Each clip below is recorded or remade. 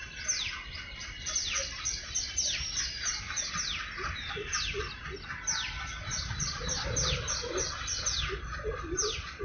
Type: recorded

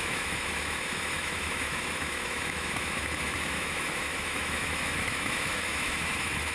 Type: remade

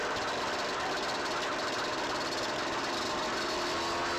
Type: recorded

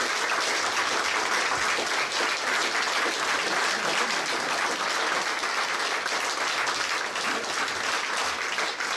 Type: recorded